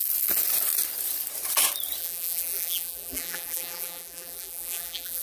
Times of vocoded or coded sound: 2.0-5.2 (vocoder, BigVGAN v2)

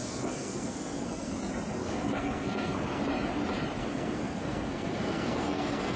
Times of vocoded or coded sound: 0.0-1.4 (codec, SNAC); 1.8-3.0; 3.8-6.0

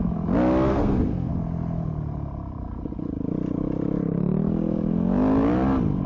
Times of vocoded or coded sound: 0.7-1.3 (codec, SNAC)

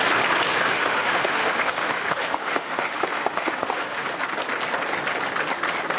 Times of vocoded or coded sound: 0.5-4.1 (autoencoder, DAC-VAE)